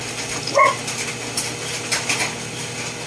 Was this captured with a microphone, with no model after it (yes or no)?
yes